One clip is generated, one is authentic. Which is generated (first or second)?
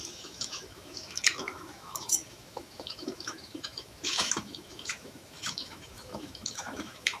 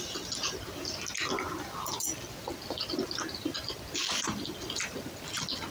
first